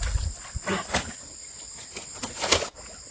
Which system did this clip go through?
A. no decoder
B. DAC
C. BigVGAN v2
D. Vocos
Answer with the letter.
A